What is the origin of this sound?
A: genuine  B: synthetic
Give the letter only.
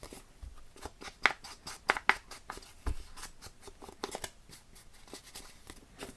A